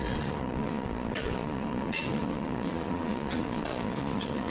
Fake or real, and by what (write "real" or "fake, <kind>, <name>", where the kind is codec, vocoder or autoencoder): fake, vocoder, Vocos